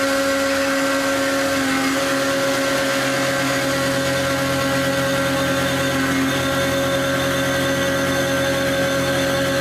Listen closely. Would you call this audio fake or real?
real